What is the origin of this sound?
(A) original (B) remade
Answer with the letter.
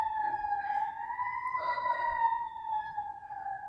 A